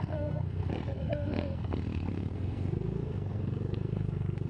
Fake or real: fake